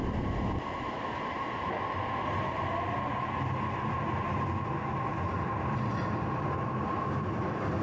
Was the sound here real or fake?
real